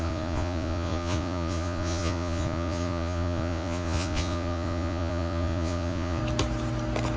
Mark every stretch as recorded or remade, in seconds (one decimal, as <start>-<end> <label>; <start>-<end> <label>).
0.0-6.2 remade; 6.2-7.2 recorded